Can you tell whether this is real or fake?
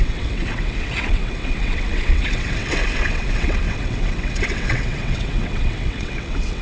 fake